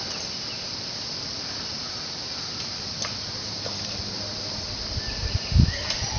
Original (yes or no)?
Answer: no